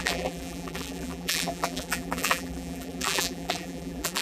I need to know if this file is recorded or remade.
remade